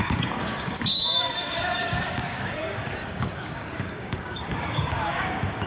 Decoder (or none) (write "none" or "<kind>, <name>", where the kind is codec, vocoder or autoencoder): codec, DAC